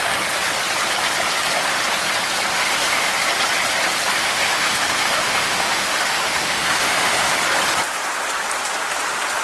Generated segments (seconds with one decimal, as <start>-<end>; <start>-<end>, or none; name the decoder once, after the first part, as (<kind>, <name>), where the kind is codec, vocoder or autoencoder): 2.5-3.1 (autoencoder, DAC-VAE); 4.2-7.3